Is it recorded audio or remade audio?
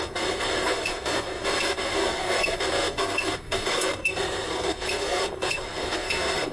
remade